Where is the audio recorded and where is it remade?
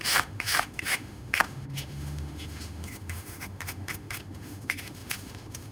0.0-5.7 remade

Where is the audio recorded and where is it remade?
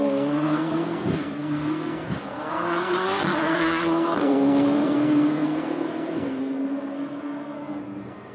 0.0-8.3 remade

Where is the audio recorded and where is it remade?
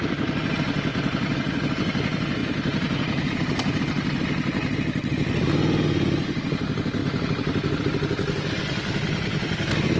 0.0-0.9 recorded; 0.9-1.7 remade; 1.7-2.4 recorded; 2.4-3.8 remade; 3.8-7.0 recorded; 7.0-7.8 remade; 7.8-10.0 recorded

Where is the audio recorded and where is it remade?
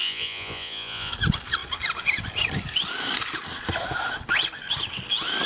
0.0-1.1 remade; 1.1-5.5 recorded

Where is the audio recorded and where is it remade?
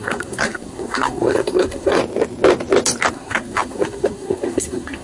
0.0-2.0 remade; 2.0-3.1 recorded; 3.1-5.0 remade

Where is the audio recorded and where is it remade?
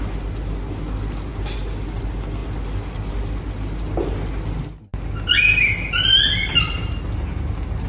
0.0-7.9 recorded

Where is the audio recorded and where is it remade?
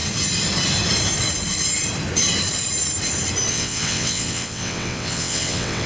0.0-3.5 recorded; 3.5-5.9 remade